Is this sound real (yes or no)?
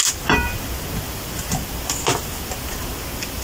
yes